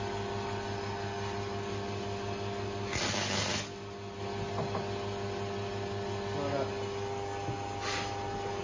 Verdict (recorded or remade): recorded